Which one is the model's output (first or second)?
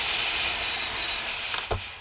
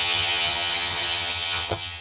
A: second